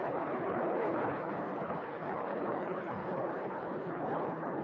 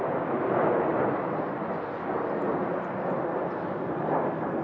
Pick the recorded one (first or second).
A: second